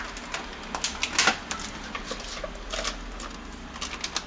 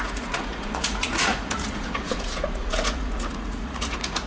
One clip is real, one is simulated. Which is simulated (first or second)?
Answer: second